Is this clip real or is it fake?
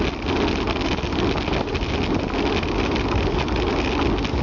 real